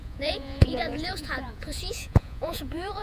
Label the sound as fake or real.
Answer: fake